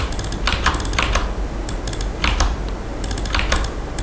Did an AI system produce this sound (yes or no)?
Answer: no